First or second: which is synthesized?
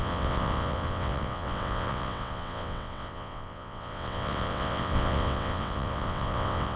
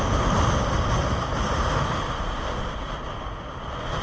first